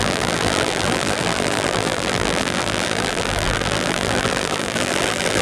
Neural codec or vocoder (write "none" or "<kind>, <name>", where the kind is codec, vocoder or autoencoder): vocoder, BigVGAN v2